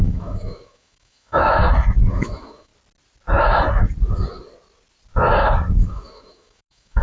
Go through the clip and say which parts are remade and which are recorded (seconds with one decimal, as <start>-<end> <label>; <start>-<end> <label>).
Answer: 0.0-1.6 remade; 1.6-2.1 recorded; 2.1-2.7 remade; 2.7-5.8 recorded; 5.8-7.0 remade